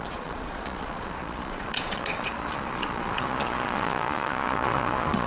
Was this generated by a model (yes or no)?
yes